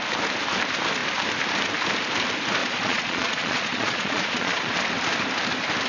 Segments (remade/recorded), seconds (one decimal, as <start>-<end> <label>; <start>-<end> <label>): 0.0-2.6 recorded; 2.6-4.7 remade; 4.7-5.9 recorded